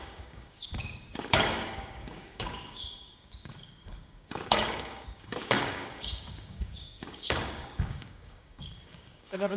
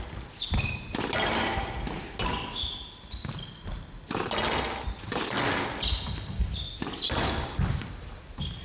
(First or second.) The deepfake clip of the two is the first